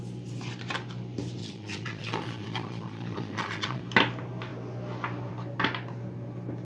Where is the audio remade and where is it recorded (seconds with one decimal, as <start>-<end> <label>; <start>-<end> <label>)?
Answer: 0.0-1.4 recorded; 1.4-3.8 remade; 3.8-6.6 recorded